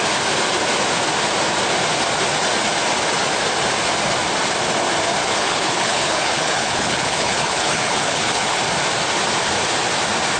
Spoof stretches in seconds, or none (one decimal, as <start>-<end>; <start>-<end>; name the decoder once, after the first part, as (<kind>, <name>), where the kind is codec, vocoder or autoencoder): 5.2-8.6 (codec, HILCodec)